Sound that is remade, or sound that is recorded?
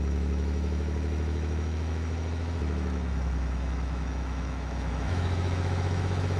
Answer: remade